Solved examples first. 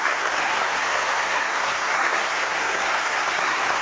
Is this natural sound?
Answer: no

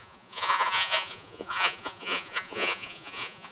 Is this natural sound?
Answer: no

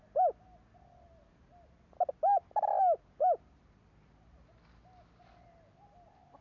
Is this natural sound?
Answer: yes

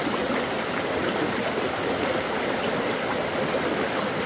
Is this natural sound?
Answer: yes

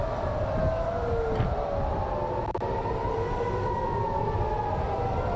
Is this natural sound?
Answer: yes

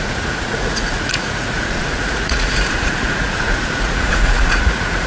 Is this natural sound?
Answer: no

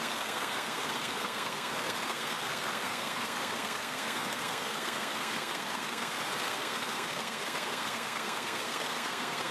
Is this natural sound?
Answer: no